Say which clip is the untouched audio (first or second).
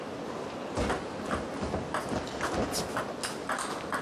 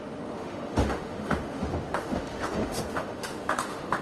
first